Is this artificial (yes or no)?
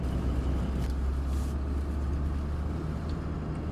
no